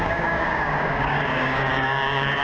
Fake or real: fake